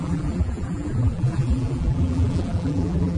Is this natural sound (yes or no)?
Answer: no